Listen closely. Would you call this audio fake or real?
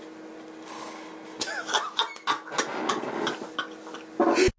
real